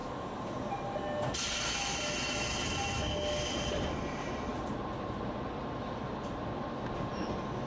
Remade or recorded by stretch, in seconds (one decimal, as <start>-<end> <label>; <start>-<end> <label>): 0.0-7.7 recorded